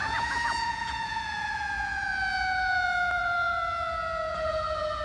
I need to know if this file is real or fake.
fake